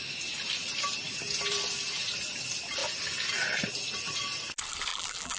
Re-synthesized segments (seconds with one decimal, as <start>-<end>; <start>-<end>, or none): 4.9-5.4